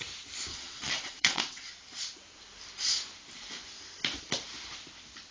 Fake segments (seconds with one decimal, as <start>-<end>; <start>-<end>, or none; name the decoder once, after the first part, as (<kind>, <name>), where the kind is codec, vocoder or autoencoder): 0.5-1.7 (vocoder, WaveNeXt)